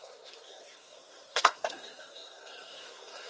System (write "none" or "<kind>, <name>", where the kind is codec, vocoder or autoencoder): codec, SNAC